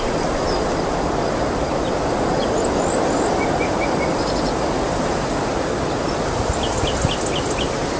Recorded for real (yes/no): yes